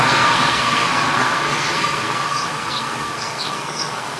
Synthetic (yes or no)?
yes